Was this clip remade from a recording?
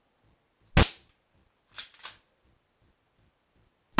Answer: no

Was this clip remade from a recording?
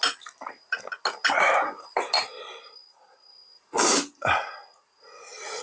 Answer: no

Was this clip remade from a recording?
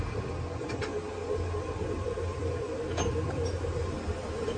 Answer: no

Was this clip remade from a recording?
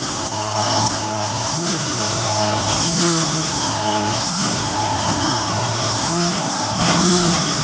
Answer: yes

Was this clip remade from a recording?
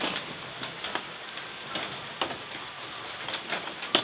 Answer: no